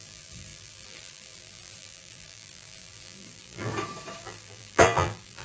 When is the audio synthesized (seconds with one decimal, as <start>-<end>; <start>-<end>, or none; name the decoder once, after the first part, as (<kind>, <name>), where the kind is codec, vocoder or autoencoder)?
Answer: 0.0-3.7 (vocoder, BigVGAN v2); 4.2-5.4